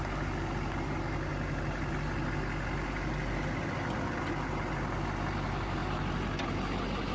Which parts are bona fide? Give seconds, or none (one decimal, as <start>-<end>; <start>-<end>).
0.0-7.1